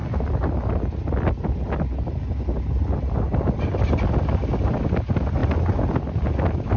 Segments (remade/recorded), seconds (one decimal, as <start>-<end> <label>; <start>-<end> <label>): 0.0-6.8 recorded